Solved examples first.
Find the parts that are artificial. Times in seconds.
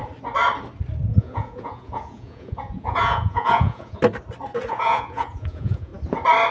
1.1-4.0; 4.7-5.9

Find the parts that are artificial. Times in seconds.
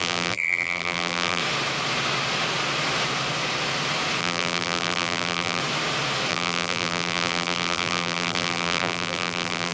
0.0-1.4; 4.2-5.6; 6.3-9.7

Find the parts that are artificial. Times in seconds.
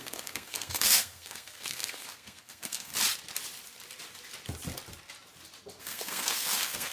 0.0-2.9; 5.8-6.9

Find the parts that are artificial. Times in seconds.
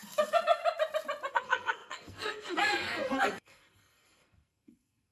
0.0-0.6; 1.3-5.1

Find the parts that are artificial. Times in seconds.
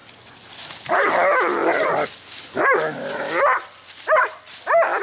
none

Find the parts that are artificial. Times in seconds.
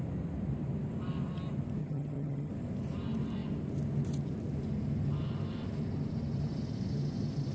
1.8-2.5